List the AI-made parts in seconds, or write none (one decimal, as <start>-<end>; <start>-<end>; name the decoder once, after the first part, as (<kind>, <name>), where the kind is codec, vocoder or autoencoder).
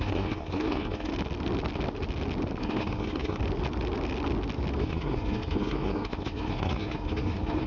0.0-1.1 (codec, SNAC); 2.6-3.4; 4.8-7.7